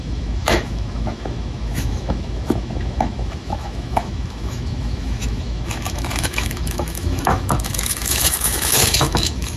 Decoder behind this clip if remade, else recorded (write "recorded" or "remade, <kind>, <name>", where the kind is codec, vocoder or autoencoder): remade, autoencoder, DAC-VAE